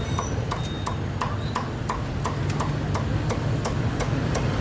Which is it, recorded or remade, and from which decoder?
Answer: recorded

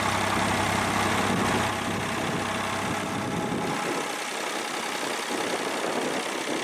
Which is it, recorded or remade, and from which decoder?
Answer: recorded